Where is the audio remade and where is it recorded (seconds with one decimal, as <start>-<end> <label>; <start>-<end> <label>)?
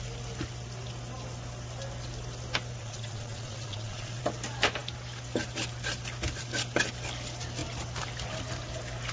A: 0.0-2.8 recorded; 2.8-4.2 remade; 4.2-9.1 recorded